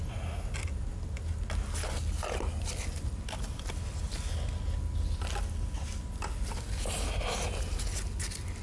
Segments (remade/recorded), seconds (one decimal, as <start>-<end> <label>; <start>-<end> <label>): 0.0-8.6 recorded